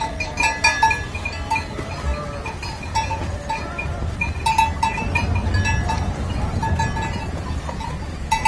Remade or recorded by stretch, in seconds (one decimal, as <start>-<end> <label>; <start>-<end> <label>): 0.0-8.5 recorded